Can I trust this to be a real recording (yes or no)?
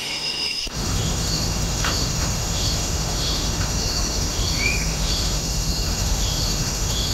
no